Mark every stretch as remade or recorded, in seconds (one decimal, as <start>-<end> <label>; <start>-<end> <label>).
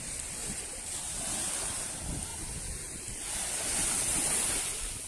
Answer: 0.0-5.1 recorded